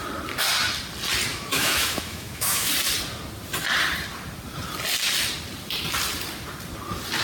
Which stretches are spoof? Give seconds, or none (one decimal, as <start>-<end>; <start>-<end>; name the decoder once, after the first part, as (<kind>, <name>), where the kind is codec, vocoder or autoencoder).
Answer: 1.3-2.7 (autoencoder, DAC-VAE)